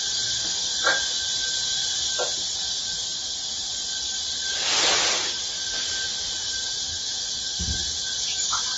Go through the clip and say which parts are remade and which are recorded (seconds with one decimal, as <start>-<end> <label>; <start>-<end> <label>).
0.0-7.8 recorded; 7.8-8.8 remade